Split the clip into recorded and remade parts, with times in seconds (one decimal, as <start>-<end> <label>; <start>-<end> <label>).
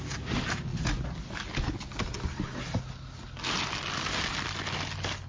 0.0-5.3 recorded